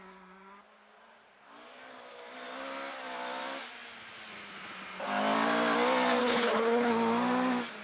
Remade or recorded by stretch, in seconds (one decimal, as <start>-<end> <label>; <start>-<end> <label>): 0.0-6.2 recorded; 6.2-6.9 remade; 6.9-7.8 recorded